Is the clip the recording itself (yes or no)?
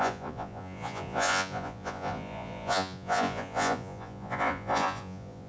no